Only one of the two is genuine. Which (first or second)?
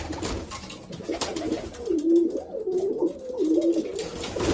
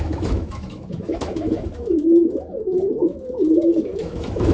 first